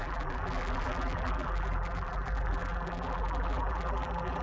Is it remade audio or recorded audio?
remade